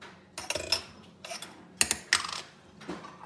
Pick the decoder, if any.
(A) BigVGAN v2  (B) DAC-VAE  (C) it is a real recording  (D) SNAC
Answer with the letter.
C